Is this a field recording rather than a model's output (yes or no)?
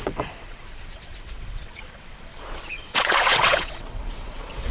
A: no